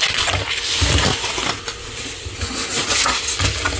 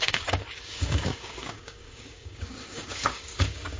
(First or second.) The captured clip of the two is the first